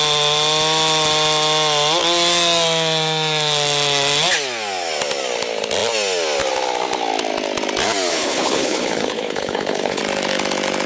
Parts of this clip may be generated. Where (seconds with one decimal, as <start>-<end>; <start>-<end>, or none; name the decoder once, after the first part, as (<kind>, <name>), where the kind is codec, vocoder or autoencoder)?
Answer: 8.1-10.0 (codec, HILCodec)